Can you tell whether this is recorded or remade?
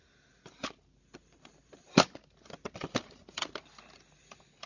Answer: recorded